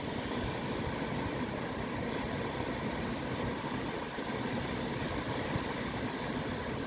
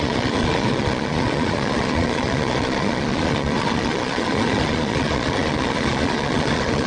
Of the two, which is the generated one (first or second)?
second